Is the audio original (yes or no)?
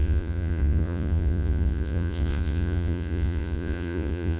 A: no